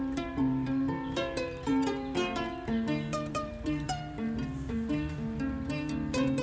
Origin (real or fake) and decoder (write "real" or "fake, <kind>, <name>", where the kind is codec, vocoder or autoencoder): fake, vocoder, BigVGAN v2